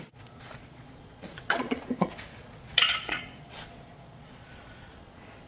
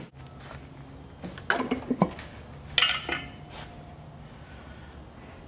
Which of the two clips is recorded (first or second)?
second